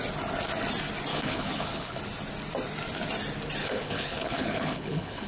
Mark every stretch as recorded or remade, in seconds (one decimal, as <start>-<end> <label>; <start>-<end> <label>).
0.0-1.1 recorded; 1.1-2.0 remade; 2.0-3.6 recorded; 3.6-5.3 remade